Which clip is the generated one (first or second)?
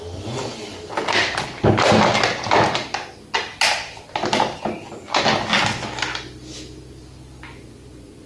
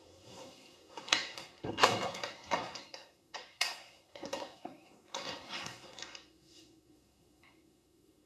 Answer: second